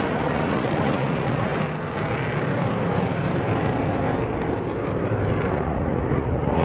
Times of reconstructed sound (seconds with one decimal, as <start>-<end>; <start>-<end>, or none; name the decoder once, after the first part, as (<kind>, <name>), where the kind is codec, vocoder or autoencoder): 0.0-1.5 (vocoder, Vocos); 5.5-6.6